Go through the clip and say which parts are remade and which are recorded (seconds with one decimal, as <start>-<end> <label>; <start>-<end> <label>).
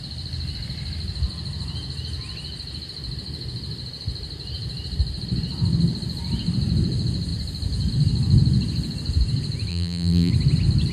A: 0.0-9.7 recorded; 9.7-10.3 remade; 10.3-10.9 recorded